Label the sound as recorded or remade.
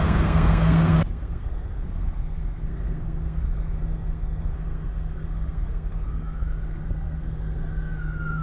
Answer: remade